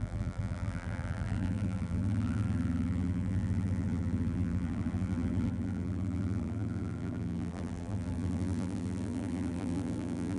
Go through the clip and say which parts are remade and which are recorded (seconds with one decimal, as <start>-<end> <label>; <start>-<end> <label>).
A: 0.0-10.4 remade